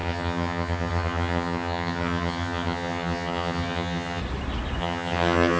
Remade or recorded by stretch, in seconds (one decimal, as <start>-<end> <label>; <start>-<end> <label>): 0.0-4.2 remade; 4.2-4.8 recorded; 4.8-5.6 remade